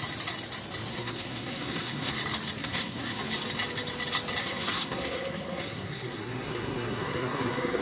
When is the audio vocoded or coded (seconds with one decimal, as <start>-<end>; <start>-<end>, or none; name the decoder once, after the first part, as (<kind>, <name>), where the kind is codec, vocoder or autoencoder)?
0.9-2.1 (codec, SNAC); 2.6-3.2; 4.4-7.8